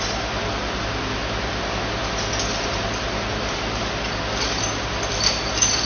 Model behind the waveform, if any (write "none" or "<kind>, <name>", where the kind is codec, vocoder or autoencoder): vocoder, BigVGAN v2